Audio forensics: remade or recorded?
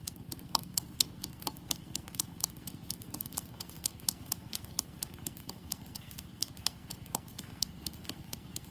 remade